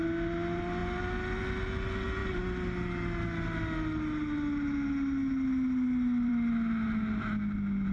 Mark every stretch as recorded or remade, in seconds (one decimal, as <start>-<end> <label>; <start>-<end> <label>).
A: 0.0-7.9 recorded